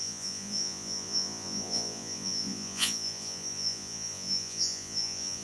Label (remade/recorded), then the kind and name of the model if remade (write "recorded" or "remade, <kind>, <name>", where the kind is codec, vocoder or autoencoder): remade, vocoder, Vocos